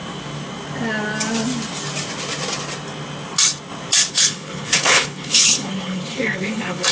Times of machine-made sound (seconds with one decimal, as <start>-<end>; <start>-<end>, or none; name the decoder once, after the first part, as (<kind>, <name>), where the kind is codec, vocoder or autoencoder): 4.1-6.9 (codec, HILCodec)